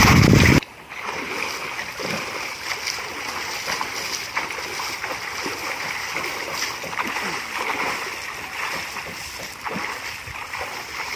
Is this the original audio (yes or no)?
yes